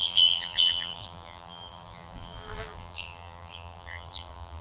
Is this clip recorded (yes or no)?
no